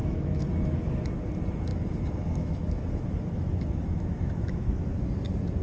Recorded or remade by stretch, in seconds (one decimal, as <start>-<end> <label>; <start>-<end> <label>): 0.0-1.0 remade; 1.0-1.7 recorded; 1.7-5.1 remade; 5.1-5.6 recorded